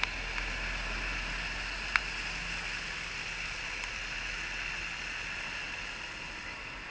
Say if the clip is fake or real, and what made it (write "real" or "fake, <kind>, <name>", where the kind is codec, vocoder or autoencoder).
real